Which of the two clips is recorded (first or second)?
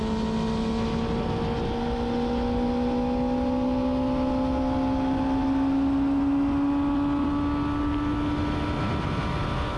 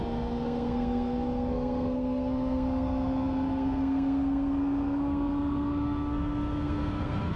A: first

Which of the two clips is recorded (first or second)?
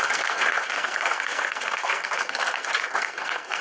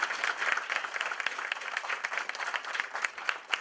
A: second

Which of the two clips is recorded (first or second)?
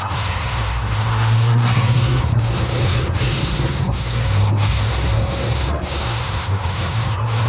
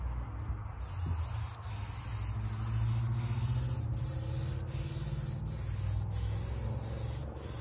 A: second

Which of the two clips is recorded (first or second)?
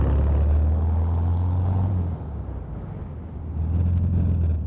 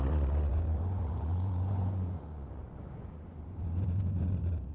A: first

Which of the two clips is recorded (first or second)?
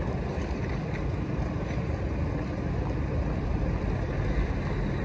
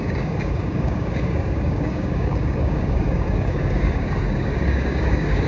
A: first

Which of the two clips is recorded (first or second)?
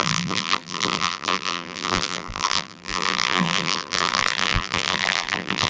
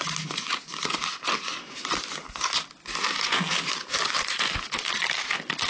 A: second